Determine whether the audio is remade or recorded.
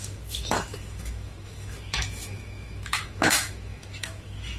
remade